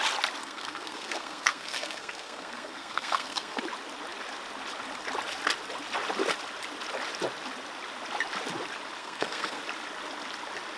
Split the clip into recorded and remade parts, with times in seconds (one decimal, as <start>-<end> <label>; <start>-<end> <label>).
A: 0.0-0.4 recorded; 0.4-3.6 remade; 3.6-9.0 recorded; 9.0-9.6 remade; 9.6-10.8 recorded